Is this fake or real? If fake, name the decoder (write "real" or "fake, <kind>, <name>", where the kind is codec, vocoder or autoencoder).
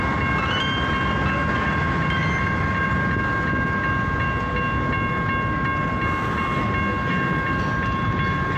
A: real